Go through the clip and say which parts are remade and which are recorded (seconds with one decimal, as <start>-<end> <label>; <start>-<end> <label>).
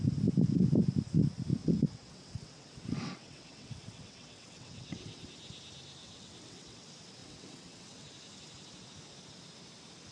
0.0-1.6 recorded; 1.6-5.2 remade; 5.2-6.0 recorded; 6.0-6.8 remade; 6.8-7.2 recorded; 7.2-8.1 remade; 8.1-10.1 recorded